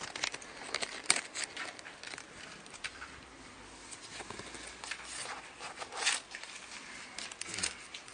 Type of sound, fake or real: real